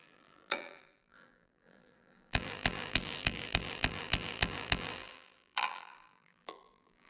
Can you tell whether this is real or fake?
fake